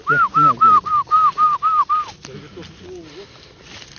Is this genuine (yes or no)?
yes